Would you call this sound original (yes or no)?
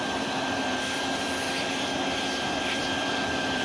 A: no